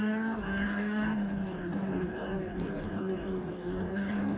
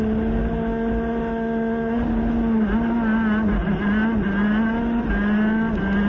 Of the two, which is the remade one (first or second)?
first